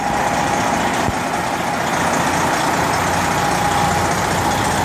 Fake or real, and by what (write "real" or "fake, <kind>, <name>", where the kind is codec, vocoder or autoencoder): real